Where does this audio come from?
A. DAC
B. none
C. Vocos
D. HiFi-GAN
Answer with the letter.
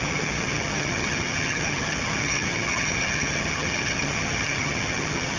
D